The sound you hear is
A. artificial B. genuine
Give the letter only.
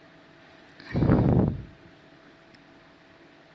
B